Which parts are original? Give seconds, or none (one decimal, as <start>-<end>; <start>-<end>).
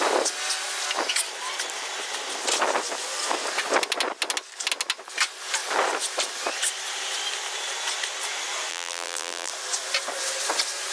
0.0-8.7; 9.5-10.9